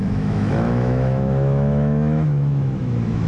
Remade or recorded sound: remade